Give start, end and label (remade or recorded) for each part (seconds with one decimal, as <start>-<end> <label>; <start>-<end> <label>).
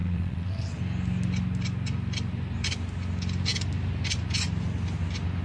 0.0-0.8 remade; 0.8-5.4 recorded